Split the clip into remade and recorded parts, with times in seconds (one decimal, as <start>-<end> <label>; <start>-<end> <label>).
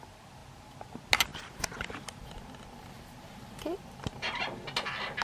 0.0-1.3 recorded; 1.3-4.4 remade; 4.4-5.2 recorded